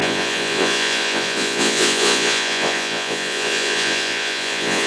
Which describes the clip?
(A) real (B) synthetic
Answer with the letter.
B